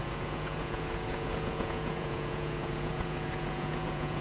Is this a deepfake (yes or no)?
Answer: yes